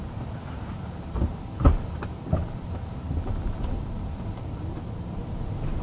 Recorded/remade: remade